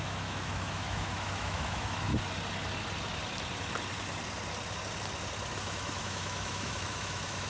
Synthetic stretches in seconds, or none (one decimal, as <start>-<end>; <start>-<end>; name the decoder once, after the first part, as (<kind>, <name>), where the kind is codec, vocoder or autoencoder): 0.0-2.1 (autoencoder, DAC-VAE); 5.6-7.5